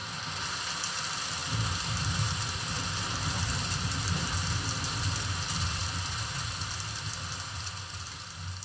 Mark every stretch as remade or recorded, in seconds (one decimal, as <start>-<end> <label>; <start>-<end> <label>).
0.0-8.6 recorded